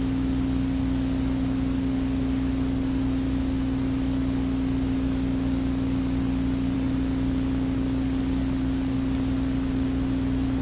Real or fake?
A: real